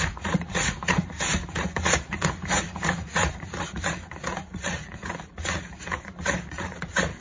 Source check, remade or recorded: remade